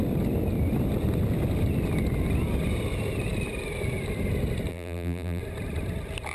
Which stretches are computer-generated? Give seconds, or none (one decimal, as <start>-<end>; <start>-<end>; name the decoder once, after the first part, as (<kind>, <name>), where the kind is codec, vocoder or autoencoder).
4.7-5.4 (vocoder, BigVGAN v2)